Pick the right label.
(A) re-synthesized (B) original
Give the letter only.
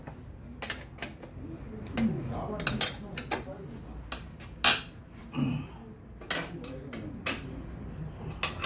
B